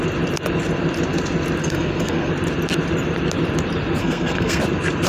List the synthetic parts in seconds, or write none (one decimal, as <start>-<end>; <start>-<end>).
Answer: 1.6-2.3; 4.0-4.6